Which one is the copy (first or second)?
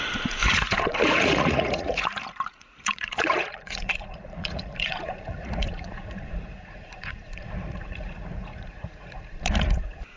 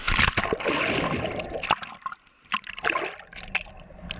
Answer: first